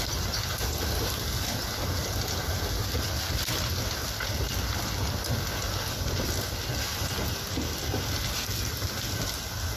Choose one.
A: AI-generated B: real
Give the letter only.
B